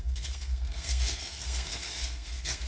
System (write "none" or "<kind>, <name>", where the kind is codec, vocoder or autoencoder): codec, SNAC